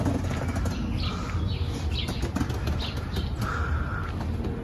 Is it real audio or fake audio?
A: real